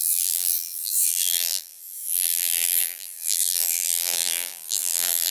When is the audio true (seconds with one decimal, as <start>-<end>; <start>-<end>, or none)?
none